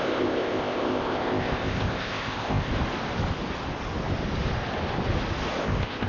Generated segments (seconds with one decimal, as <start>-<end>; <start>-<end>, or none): 0.0-2.7; 5.6-6.1